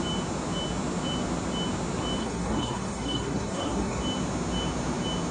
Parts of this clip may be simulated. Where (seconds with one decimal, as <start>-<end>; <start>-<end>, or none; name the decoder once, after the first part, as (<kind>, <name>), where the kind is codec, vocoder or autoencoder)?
2.2-4.0 (codec, SNAC)